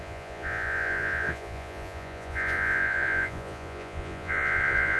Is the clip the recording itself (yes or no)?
no